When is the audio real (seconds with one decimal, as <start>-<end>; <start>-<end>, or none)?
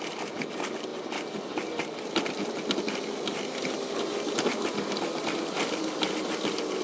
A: 0.0-6.8